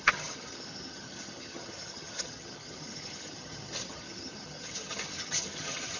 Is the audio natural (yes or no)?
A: no